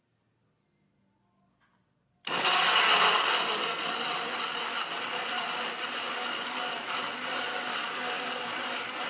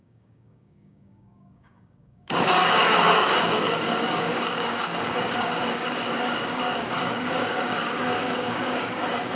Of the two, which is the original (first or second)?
first